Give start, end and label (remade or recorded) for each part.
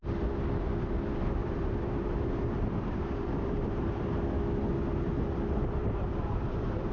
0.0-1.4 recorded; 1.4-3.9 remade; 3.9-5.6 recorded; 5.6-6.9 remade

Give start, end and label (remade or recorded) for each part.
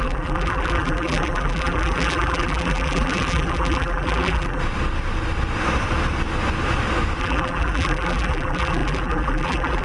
0.0-4.6 remade; 4.6-7.2 recorded; 7.2-9.8 remade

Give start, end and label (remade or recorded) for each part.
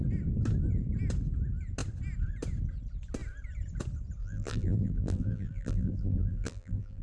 0.0-4.2 recorded; 4.2-7.0 remade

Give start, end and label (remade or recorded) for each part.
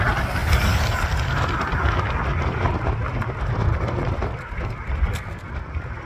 0.0-2.3 recorded; 2.3-4.9 remade; 4.9-6.1 recorded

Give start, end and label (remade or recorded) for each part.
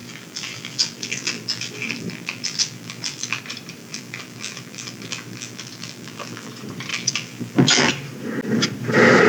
0.0-3.4 remade; 3.4-3.8 recorded; 3.8-6.5 remade; 6.5-6.9 recorded; 6.9-7.9 remade; 7.9-9.3 recorded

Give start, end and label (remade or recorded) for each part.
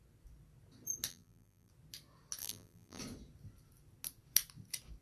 0.0-1.1 recorded; 1.1-1.7 remade; 1.7-2.4 recorded; 2.4-3.0 remade; 3.0-5.0 recorded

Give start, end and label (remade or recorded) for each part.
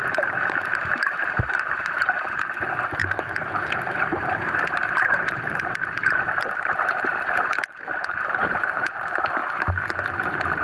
0.0-9.4 remade; 9.4-10.6 recorded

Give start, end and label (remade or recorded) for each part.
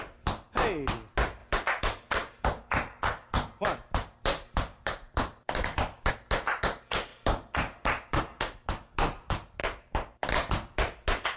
0.0-1.4 recorded; 1.4-6.1 remade; 6.1-7.1 recorded; 7.1-8.2 remade; 8.2-11.4 recorded